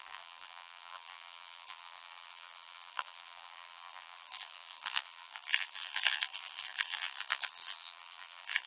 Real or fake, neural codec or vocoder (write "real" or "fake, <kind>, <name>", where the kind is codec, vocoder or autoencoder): fake, vocoder, BigVGAN v2